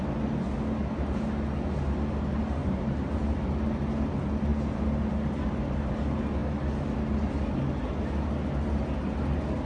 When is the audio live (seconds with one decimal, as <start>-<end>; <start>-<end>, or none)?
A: 0.0-2.6; 3.1-9.7

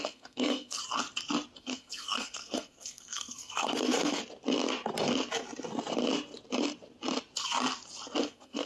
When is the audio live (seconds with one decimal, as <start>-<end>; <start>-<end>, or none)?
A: 0.8-1.6; 4.2-8.2

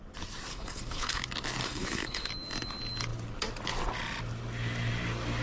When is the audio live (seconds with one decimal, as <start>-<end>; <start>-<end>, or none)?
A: 0.0-0.5; 1.2-1.6; 2.3-5.4

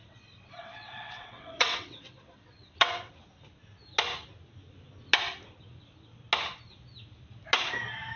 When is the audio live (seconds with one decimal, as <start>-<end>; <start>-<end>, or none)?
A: 3.1-8.2

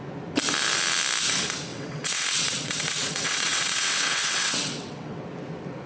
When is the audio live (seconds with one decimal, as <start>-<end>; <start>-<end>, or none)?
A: 0.0-1.7; 5.2-5.9